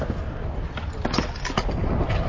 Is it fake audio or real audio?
real